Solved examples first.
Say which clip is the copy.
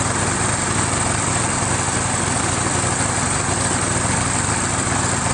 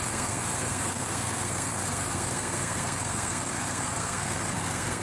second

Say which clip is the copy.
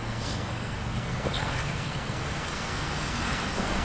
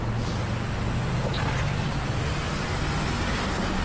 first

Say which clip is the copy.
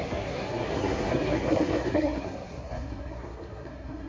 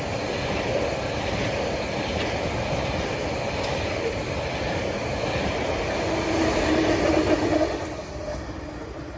first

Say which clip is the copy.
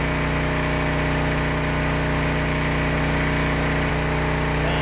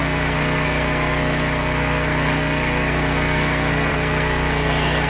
second